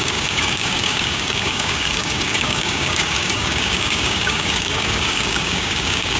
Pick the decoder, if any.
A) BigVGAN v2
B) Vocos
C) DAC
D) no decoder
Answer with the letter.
C